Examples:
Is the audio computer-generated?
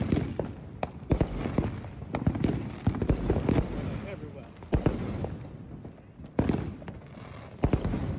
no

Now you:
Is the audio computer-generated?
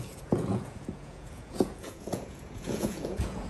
yes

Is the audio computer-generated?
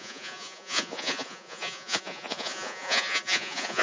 yes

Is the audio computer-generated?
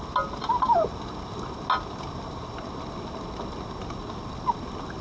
no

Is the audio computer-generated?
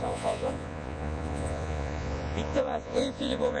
yes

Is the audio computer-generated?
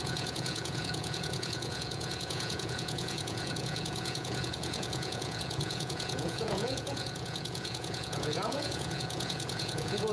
yes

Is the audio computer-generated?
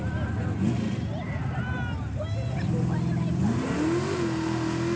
no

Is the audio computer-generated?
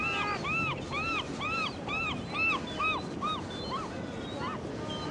no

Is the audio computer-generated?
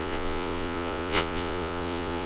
yes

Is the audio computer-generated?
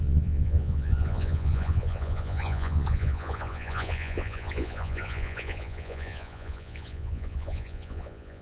yes